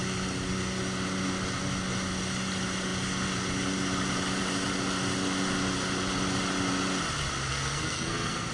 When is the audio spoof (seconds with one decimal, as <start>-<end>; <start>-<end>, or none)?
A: 7.5-8.5